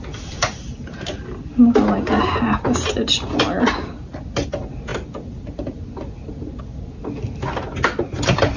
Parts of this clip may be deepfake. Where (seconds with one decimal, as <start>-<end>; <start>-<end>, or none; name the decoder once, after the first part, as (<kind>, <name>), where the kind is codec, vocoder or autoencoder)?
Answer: none